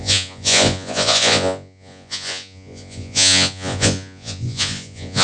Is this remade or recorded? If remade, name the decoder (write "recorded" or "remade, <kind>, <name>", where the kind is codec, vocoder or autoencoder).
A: remade, vocoder, Vocos